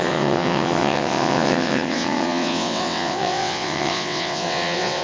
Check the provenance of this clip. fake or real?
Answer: fake